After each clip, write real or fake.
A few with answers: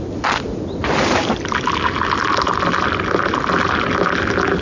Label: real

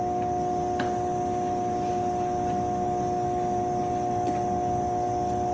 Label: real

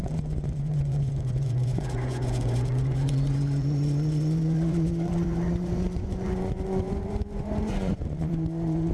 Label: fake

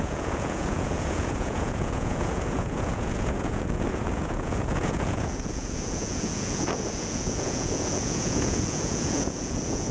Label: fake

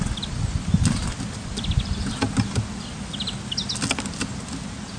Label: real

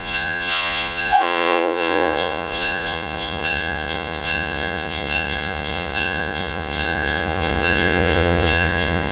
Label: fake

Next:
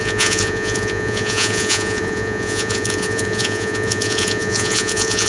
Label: fake